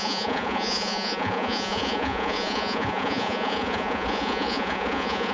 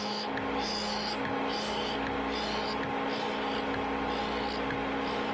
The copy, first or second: first